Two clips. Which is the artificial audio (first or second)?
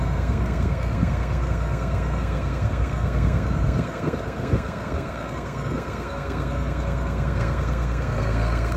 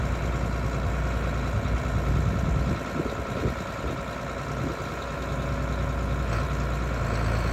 first